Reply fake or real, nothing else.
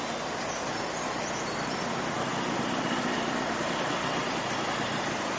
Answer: real